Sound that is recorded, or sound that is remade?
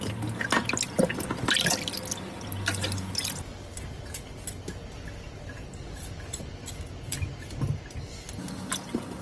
recorded